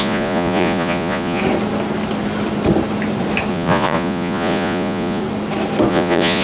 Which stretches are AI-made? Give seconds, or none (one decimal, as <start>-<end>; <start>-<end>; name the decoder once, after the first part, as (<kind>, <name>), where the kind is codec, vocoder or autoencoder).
0.0-1.4 (vocoder, Vocos); 3.5-5.2; 5.9-6.4

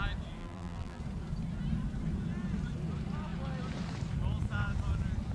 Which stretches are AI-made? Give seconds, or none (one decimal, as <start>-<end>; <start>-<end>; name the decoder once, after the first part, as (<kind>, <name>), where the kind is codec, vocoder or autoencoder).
0.4-1.0 (vocoder, BigVGAN v2)